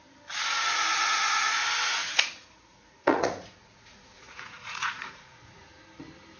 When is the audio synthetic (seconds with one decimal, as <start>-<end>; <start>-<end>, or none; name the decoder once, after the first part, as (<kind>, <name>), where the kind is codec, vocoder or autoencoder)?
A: 2.0-5.8 (vocoder, Vocos)